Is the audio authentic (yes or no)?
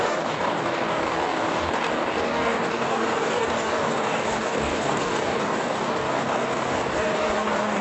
no